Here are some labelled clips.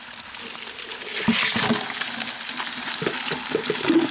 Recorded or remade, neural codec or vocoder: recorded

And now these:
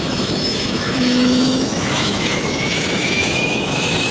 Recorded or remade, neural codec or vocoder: remade, autoencoder, DAC-VAE